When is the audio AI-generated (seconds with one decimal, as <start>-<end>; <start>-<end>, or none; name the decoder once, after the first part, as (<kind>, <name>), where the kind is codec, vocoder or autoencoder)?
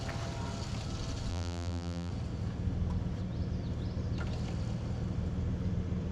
1.3-2.1 (vocoder, BigVGAN v2)